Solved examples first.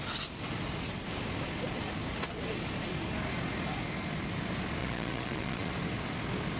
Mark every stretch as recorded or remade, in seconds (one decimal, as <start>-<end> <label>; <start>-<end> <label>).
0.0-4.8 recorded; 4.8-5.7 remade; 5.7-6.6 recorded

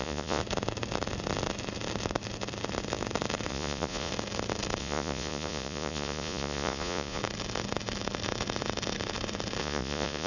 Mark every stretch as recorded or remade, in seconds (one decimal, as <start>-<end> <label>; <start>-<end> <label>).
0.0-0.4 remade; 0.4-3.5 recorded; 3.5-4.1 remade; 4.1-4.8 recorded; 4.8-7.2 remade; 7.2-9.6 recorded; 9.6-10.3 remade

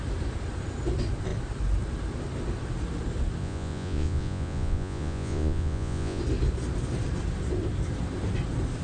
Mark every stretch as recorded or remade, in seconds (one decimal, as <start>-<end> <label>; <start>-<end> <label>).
0.0-3.4 recorded; 3.4-6.2 remade; 6.2-8.8 recorded

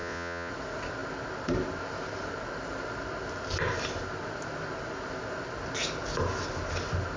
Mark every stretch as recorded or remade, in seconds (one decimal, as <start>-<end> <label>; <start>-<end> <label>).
0.0-0.5 remade; 0.5-7.2 recorded

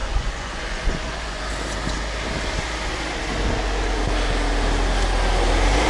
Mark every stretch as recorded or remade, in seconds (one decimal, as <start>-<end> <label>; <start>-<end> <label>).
0.0-1.4 remade; 1.4-5.9 recorded